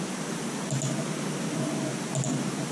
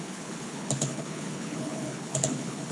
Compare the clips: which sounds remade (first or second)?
second